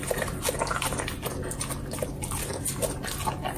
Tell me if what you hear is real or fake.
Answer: real